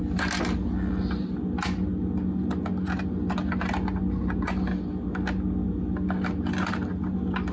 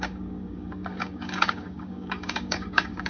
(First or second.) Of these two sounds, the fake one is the second